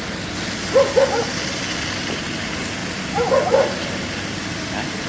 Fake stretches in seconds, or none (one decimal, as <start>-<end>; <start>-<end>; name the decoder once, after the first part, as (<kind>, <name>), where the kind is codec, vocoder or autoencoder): 2.8-5.1 (vocoder, BigVGAN v2)